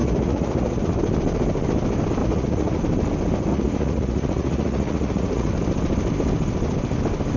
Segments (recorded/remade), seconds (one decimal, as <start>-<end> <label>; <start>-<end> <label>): 0.0-0.8 remade; 0.8-2.2 recorded; 2.2-2.8 remade; 2.8-3.5 recorded; 3.5-5.5 remade; 5.5-7.4 recorded